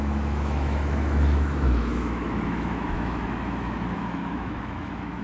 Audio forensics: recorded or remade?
remade